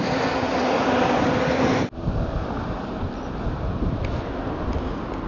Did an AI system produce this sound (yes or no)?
no